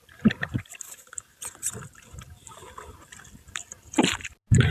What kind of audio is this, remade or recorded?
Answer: recorded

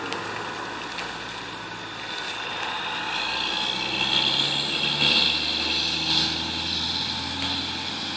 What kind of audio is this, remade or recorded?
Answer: recorded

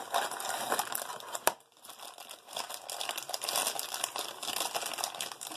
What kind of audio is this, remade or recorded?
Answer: recorded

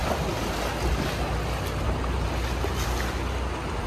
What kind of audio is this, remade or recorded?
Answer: recorded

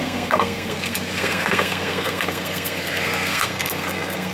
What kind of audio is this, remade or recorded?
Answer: remade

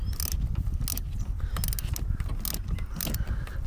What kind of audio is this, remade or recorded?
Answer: recorded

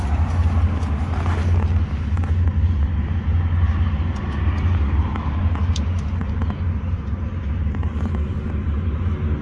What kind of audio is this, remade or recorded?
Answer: recorded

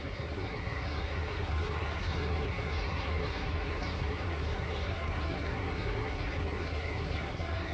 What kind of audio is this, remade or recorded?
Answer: remade